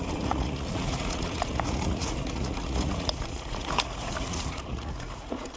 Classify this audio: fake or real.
fake